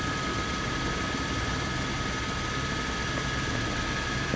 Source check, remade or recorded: recorded